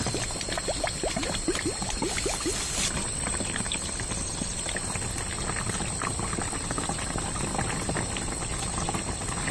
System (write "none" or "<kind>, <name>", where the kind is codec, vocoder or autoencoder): none